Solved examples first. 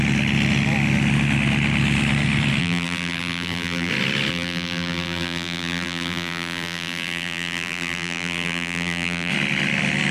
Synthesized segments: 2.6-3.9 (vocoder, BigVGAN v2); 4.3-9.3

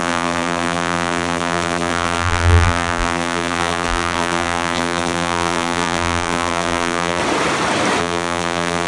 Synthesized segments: 0.0-7.2 (vocoder, BigVGAN v2); 8.0-8.9

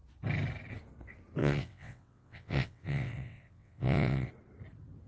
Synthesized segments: 1.4-4.3 (vocoder, WaveNeXt)